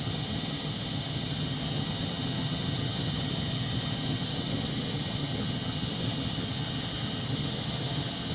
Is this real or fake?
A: fake